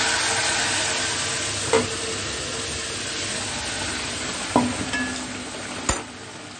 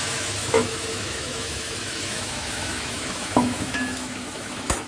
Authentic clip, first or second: first